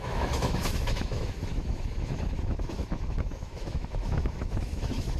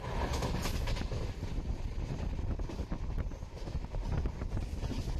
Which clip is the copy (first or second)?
first